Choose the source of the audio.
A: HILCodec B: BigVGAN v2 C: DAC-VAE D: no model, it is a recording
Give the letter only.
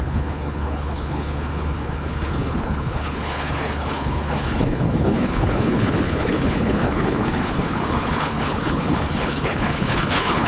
A